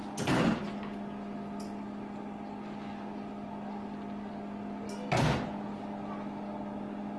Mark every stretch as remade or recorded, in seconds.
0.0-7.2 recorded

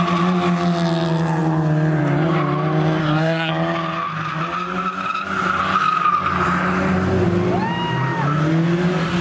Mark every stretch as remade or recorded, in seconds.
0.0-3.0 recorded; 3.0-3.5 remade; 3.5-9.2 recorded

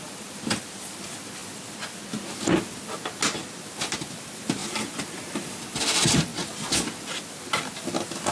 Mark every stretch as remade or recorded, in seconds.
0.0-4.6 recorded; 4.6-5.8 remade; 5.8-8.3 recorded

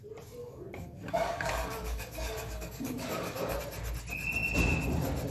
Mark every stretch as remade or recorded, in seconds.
0.0-0.4 recorded; 0.4-3.6 remade; 3.6-5.3 recorded

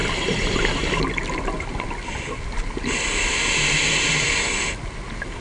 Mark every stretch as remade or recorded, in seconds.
0.0-5.4 recorded

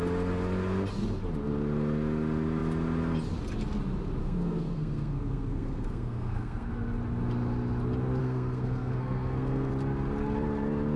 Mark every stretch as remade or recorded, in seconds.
0.0-4.2 recorded; 4.2-6.7 remade; 6.7-8.2 recorded; 8.2-9.7 remade; 9.7-11.0 recorded

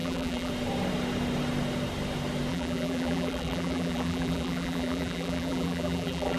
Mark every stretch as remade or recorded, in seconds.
0.0-0.5 remade; 0.5-2.5 recorded; 2.5-6.4 remade